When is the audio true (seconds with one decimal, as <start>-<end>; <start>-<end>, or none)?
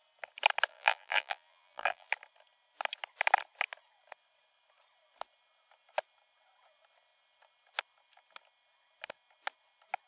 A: 0.0-0.7; 2.1-10.1